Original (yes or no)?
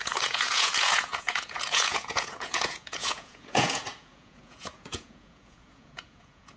no